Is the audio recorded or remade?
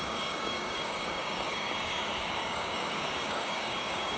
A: remade